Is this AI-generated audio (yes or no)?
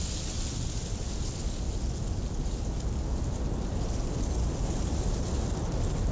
no